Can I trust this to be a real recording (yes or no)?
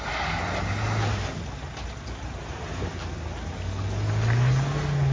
yes